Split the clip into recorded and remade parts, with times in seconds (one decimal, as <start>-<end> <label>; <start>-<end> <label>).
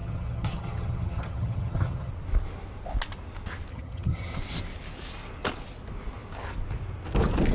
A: 0.0-2.1 remade; 2.1-3.7 recorded; 3.7-4.4 remade; 4.4-7.5 recorded